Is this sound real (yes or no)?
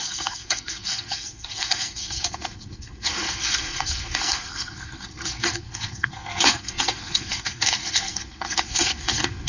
no